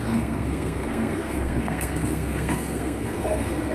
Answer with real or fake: fake